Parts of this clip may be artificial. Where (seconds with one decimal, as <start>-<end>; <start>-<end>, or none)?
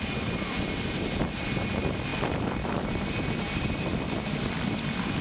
none